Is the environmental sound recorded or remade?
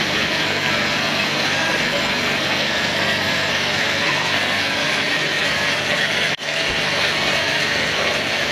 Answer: remade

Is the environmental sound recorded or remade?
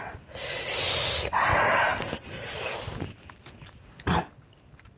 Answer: recorded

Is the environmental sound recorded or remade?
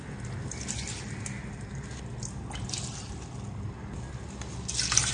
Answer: recorded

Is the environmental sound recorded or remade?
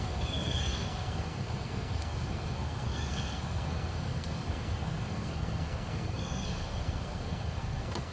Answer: remade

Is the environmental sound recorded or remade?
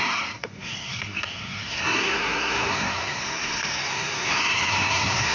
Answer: remade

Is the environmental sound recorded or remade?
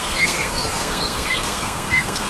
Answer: remade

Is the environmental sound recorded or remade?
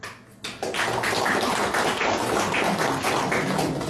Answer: recorded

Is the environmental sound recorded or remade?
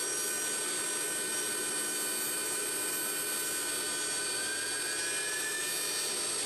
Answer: recorded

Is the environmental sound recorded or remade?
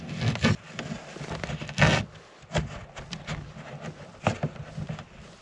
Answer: recorded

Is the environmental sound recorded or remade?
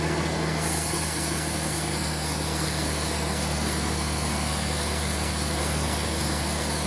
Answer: remade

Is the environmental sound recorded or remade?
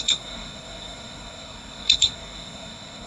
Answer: remade